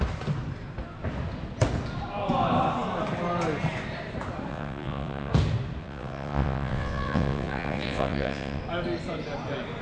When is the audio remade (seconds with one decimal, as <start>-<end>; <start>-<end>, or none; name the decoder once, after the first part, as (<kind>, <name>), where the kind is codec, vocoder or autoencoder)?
4.5-5.3 (vocoder, WaveNeXt); 5.8-8.6